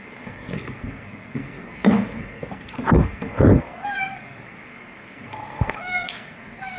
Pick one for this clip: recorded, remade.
remade